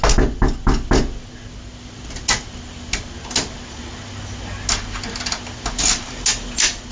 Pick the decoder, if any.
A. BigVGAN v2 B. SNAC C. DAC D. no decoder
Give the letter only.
D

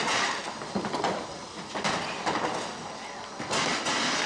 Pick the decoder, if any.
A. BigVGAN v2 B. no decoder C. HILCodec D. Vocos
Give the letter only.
B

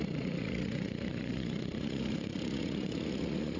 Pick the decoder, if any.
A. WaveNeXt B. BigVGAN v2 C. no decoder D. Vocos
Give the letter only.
D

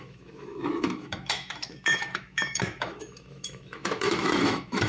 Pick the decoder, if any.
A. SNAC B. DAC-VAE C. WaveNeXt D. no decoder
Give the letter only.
B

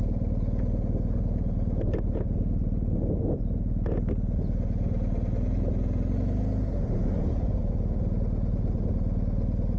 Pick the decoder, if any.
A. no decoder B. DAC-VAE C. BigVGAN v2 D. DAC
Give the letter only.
A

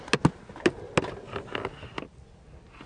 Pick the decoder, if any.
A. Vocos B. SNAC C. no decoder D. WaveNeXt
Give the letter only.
C